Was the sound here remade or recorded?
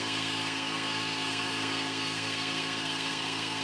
remade